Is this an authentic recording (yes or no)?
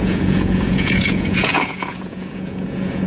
no